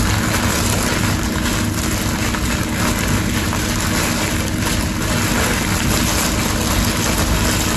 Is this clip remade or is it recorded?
recorded